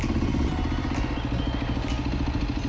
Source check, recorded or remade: recorded